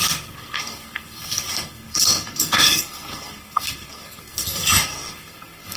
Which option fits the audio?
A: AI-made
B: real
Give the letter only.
A